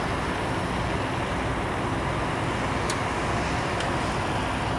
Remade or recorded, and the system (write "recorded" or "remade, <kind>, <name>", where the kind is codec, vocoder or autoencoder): recorded